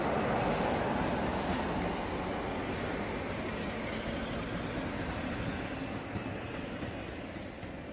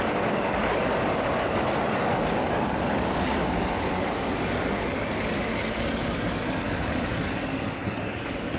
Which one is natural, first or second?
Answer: first